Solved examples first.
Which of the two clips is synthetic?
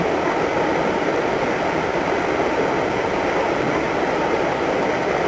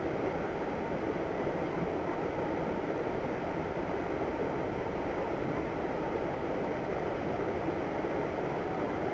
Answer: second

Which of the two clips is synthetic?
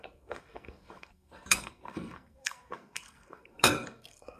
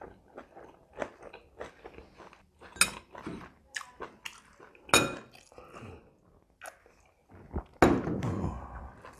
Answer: first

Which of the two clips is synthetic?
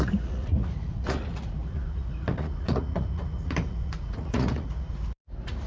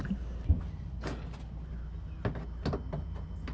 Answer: first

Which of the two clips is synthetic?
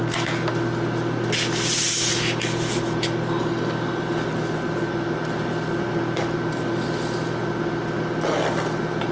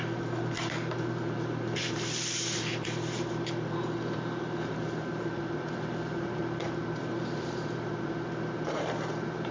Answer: second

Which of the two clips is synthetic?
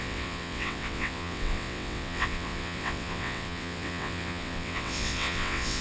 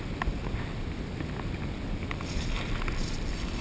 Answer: first